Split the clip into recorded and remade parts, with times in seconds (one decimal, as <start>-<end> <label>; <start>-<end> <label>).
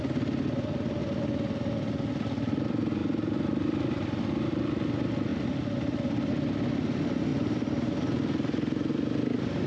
0.0-3.0 recorded; 3.0-3.7 remade; 3.7-9.7 recorded